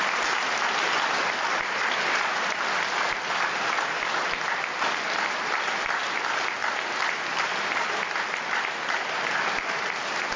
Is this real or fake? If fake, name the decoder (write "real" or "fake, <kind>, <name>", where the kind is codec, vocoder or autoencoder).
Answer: real